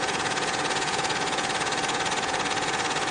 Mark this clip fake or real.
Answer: fake